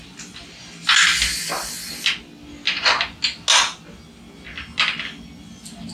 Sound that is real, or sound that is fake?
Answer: real